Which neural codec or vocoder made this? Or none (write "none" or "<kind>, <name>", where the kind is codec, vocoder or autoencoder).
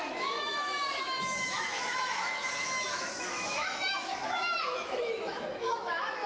autoencoder, DAC-VAE